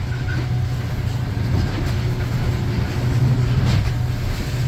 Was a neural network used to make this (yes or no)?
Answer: no